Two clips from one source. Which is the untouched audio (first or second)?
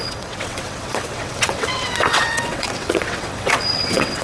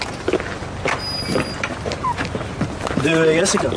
second